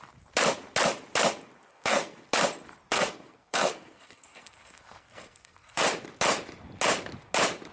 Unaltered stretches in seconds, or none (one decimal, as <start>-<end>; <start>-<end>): 0.0-1.7; 2.2-2.9; 5.8-7.7